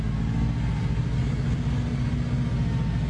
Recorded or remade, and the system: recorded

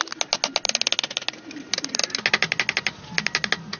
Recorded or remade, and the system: recorded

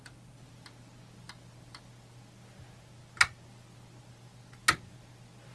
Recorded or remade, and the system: recorded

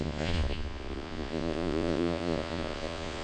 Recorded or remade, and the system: remade, vocoder, Vocos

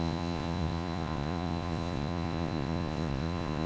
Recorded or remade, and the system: remade, vocoder, Vocos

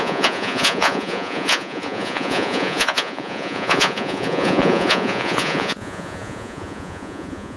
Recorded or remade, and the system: remade, vocoder, Vocos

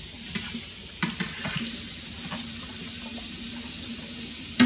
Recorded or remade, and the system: recorded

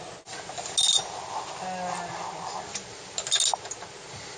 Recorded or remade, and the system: recorded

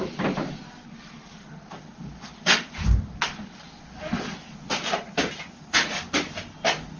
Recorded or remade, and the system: recorded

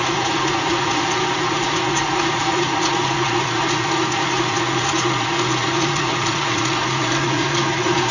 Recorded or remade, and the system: remade, vocoder, Vocos